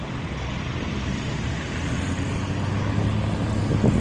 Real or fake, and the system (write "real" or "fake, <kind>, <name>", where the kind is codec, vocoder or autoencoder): real